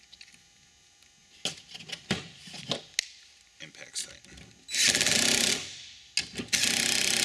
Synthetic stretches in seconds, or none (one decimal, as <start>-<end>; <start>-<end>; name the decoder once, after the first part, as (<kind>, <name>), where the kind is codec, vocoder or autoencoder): none